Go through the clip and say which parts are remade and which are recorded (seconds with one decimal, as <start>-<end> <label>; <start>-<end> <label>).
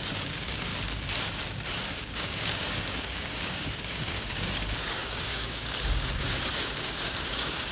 0.0-0.7 remade; 0.7-1.7 recorded; 1.7-7.7 remade